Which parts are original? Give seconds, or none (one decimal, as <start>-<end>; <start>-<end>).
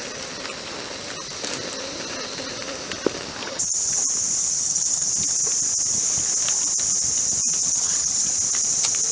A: 0.0-3.4; 4.0-4.4; 5.1-7.6; 8.3-9.1